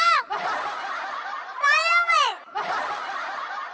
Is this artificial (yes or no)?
yes